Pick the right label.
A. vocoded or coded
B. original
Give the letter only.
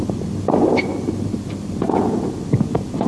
B